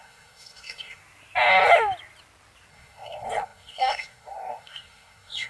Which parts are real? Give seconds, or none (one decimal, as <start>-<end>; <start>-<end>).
1.0-2.7